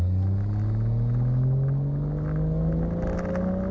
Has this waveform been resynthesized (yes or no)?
no